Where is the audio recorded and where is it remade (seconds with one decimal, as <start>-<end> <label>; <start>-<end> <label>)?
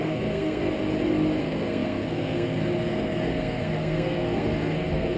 0.0-0.6 remade; 0.6-1.4 recorded; 1.4-5.2 remade